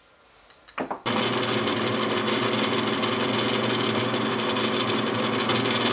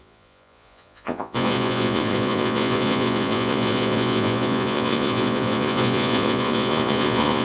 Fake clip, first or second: second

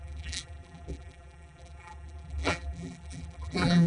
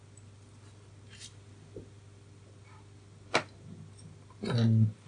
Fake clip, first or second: first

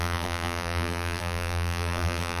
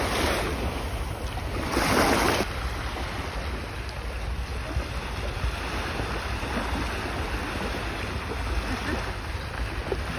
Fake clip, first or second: first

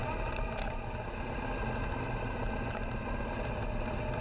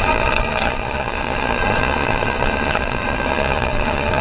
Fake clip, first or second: second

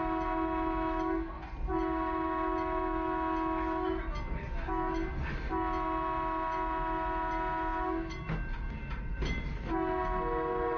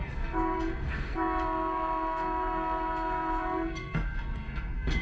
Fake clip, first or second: second